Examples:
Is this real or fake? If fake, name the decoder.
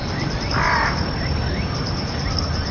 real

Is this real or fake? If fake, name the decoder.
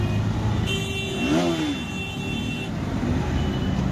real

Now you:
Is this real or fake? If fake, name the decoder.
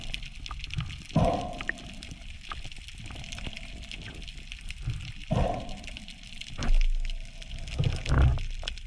real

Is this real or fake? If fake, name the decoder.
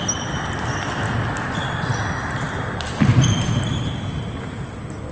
real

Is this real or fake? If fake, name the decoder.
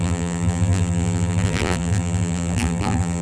fake, vocoder, BigVGAN v2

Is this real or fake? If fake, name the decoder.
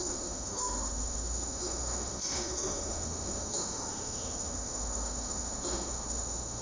fake, autoencoder, DAC-VAE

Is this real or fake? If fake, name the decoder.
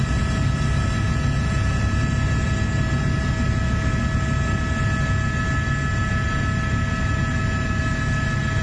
real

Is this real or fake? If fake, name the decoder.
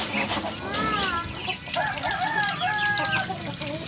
real